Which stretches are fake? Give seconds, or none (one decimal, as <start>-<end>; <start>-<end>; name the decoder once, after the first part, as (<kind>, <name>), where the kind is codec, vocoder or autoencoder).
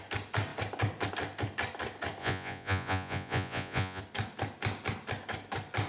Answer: 2.2-4.0 (vocoder, Vocos)